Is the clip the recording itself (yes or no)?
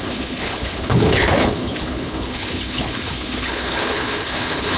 no